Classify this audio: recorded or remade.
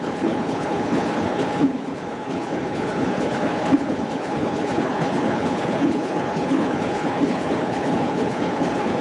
remade